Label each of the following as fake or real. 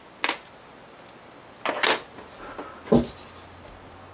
real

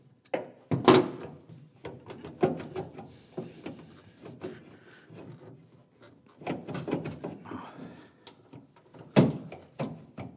real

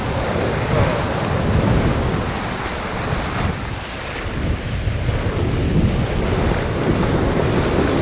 real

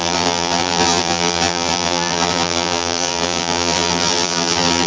fake